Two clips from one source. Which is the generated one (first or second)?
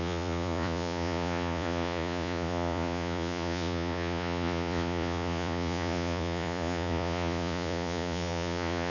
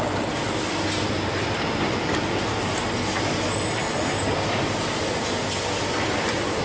first